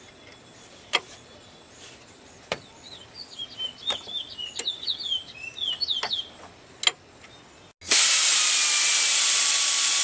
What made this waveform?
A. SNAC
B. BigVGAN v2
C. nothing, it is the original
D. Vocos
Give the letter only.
C